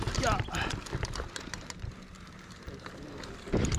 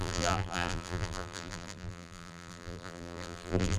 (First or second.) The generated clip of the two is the second